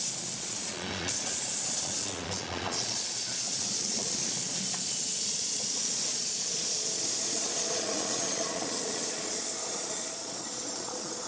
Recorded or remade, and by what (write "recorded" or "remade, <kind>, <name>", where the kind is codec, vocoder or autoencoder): remade, vocoder, Vocos